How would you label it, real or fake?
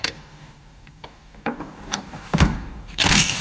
fake